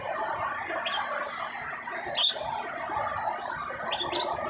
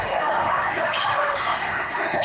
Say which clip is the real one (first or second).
first